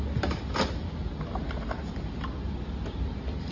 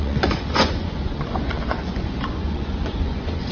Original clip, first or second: first